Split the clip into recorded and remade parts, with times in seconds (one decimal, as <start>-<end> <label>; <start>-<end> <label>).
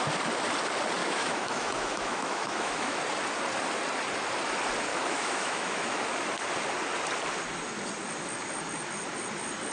0.0-1.0 recorded; 1.0-3.0 remade; 3.0-4.9 recorded; 4.9-6.1 remade; 6.1-9.7 recorded